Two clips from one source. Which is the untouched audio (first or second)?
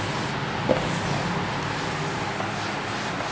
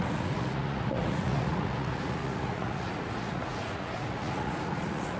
first